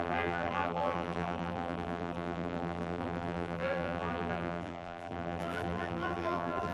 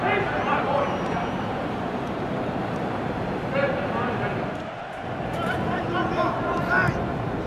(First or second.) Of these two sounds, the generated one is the first